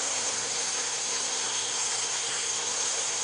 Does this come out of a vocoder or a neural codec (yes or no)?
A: yes